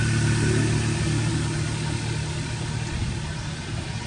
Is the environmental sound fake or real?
real